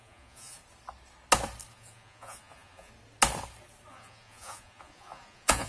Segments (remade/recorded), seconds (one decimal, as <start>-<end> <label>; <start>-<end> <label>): 0.0-0.6 remade; 0.6-1.7 recorded; 1.7-2.9 remade; 2.9-3.9 recorded; 3.9-5.7 remade